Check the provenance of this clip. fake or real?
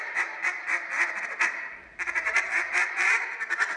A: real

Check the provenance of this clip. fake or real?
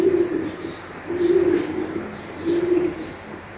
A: real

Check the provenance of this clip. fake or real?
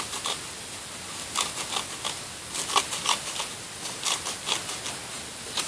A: real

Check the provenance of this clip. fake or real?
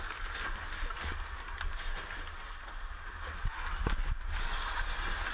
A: real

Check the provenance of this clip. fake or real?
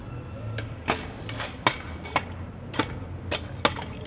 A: real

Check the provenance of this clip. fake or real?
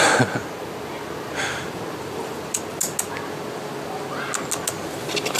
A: real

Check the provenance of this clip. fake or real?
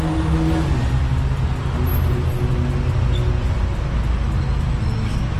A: real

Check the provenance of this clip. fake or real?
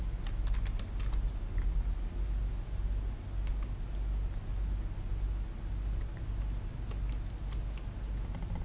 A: real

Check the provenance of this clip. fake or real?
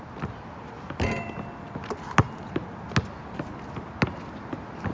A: real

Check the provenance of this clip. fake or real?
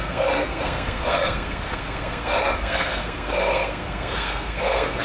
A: fake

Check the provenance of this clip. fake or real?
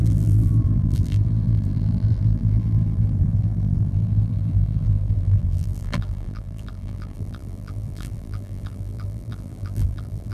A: fake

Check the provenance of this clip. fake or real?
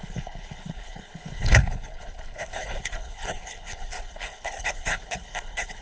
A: fake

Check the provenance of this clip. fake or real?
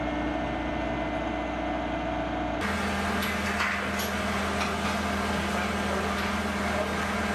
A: real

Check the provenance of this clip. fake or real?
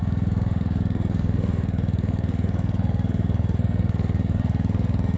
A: fake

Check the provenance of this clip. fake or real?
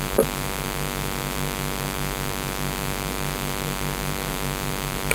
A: fake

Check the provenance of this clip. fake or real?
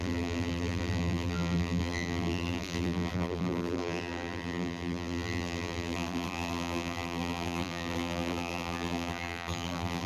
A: fake